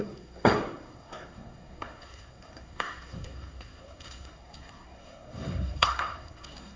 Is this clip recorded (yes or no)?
no